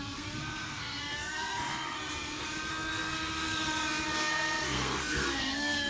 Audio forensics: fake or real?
fake